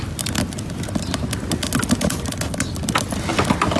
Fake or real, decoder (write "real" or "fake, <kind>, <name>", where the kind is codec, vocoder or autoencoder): real